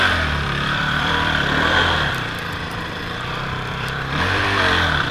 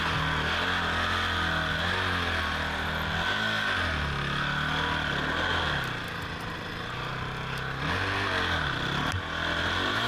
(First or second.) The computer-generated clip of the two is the first